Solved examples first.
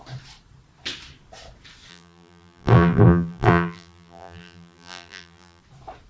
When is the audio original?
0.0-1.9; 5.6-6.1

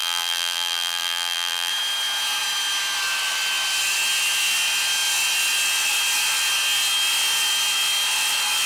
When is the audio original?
1.7-8.7

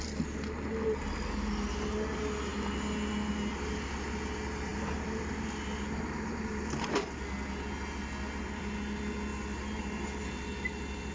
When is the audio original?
0.0-11.1

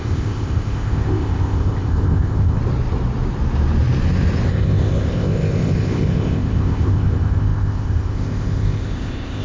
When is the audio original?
2.6-4.5

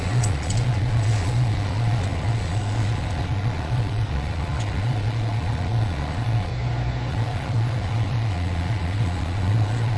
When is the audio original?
6.5-7.1

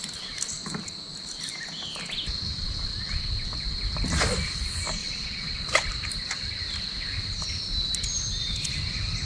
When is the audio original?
0.0-5.0; 5.8-9.3